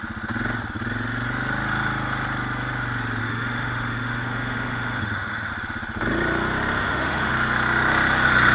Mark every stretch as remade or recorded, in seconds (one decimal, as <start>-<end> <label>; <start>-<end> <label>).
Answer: 0.0-3.2 recorded; 3.2-5.5 remade; 5.5-6.8 recorded; 6.8-7.3 remade; 7.3-8.5 recorded